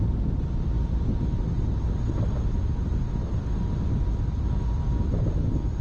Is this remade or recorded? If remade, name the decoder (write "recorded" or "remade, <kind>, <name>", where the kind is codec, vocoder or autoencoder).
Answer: recorded